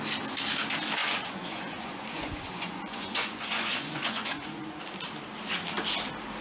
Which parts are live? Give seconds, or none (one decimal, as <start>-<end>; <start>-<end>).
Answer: 0.0-1.0; 4.8-6.4